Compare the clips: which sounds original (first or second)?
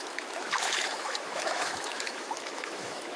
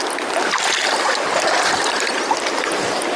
second